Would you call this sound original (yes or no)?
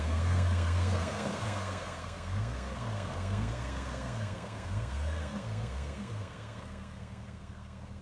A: no